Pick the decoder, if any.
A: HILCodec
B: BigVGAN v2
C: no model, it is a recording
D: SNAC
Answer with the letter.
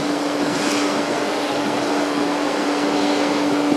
D